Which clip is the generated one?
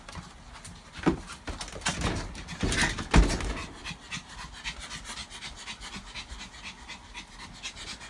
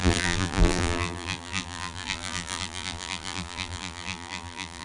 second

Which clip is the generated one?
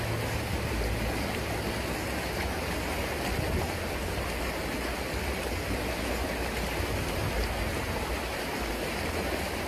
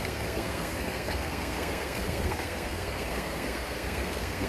second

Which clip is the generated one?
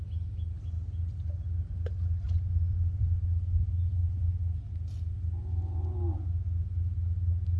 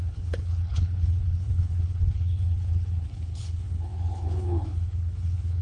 second